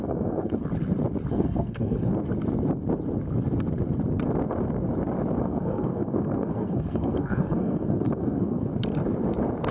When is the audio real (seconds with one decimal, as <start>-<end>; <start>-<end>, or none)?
0.6-1.3; 2.1-5.4; 8.7-9.7